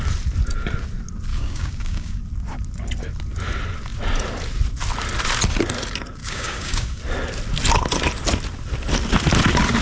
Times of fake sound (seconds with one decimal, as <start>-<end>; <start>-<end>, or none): 1.3-2.2; 6.2-7.0